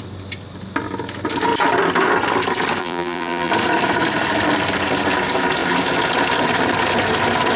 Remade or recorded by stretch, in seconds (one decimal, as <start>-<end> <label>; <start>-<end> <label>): 0.0-2.8 recorded; 2.8-3.5 remade; 3.5-7.6 recorded